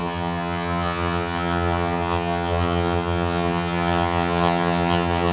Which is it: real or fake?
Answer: fake